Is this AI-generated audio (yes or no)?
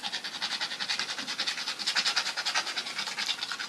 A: no